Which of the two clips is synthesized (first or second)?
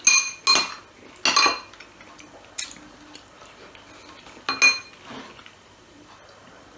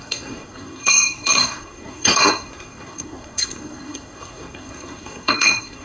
second